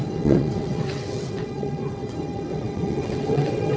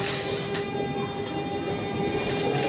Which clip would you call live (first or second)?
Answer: second